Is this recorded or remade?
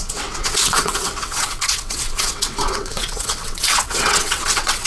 remade